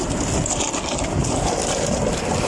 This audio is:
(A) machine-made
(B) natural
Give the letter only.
A